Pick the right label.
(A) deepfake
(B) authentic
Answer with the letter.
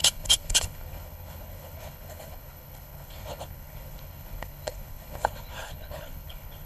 A